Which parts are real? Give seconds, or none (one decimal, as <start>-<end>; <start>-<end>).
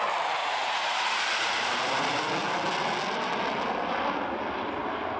0.0-0.4; 1.2-5.2